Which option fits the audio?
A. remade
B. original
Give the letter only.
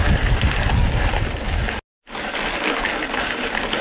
B